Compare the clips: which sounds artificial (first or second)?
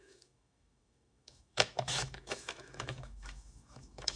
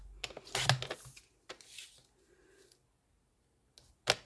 first